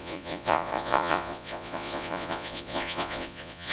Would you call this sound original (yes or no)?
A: no